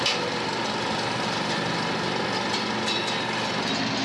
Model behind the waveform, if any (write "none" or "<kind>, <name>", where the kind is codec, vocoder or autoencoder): none